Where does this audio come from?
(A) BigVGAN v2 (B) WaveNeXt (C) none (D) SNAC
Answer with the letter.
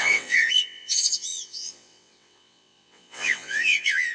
B